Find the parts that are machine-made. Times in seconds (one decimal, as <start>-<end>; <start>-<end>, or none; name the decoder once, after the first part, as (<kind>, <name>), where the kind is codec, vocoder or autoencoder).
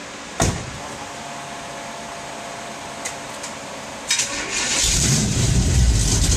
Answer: 4.7-5.8 (vocoder, BigVGAN v2)